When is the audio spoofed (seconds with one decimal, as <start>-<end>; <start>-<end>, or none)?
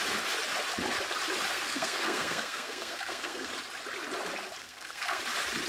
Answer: 1.5-3.5; 4.6-5.2